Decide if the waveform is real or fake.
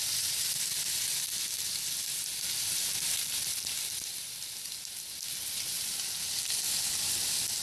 real